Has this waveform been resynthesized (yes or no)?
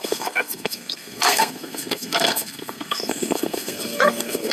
yes